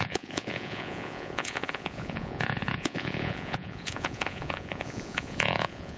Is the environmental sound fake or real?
fake